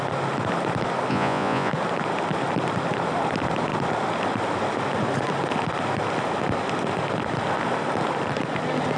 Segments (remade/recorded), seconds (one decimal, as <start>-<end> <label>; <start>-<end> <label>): 0.0-1.1 recorded; 1.1-1.7 remade; 1.7-9.0 recorded